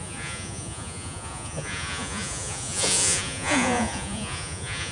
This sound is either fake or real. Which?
fake